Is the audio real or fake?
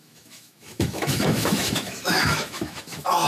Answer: fake